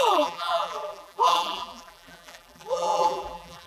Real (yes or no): no